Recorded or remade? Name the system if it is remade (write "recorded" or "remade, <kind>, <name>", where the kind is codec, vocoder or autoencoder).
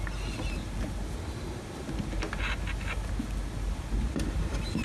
recorded